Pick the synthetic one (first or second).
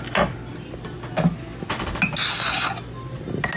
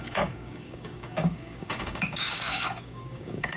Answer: second